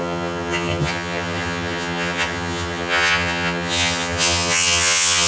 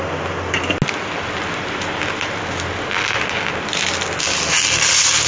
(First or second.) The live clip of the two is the second